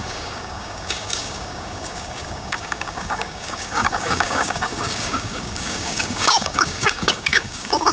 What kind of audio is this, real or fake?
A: fake